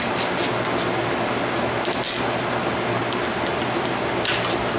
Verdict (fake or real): real